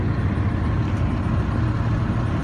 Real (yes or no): yes